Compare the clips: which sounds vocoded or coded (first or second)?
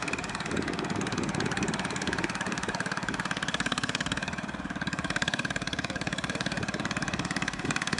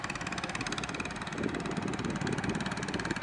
first